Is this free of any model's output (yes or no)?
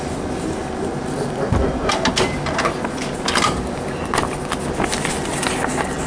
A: yes